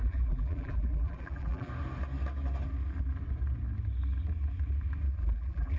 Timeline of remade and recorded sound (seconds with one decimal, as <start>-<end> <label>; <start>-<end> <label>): 0.0-1.7 remade; 1.7-5.2 recorded; 5.2-5.8 remade